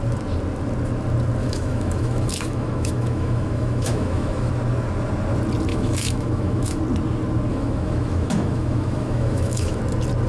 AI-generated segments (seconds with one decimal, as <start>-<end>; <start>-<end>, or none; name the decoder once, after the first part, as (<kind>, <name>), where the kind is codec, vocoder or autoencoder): 1.4-4.5 (autoencoder, DAC-VAE); 5.7-6.8; 7.5-9.8